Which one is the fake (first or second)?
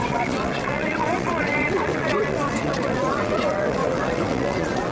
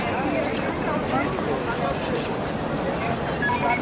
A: first